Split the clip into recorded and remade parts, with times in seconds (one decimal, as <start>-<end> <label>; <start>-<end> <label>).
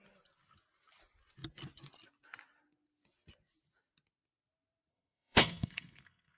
0.0-4.9 recorded; 4.9-6.4 remade